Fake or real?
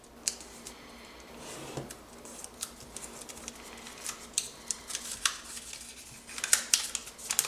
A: real